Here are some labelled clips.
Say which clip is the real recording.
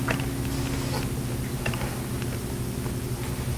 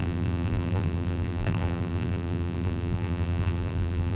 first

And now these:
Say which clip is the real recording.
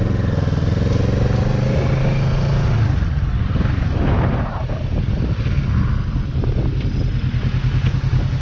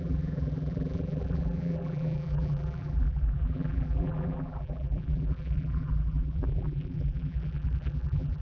first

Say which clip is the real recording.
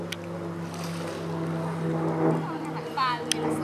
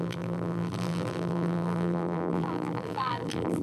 first